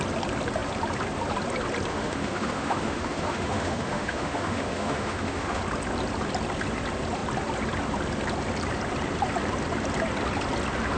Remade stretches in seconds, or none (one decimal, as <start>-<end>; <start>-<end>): 1.9-5.6